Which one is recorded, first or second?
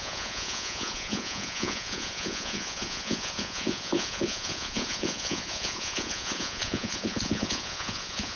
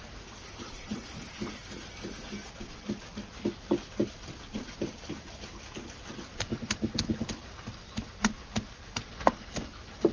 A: second